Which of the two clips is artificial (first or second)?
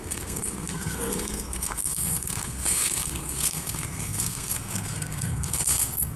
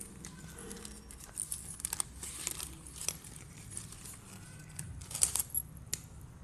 first